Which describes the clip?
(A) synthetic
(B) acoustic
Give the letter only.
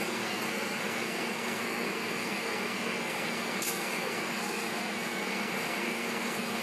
A